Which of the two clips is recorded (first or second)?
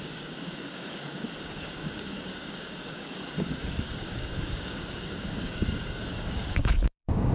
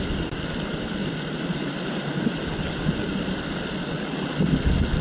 second